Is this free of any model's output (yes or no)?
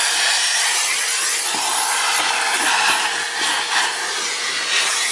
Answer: yes